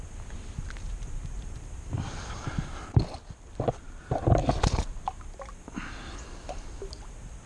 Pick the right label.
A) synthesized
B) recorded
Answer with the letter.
B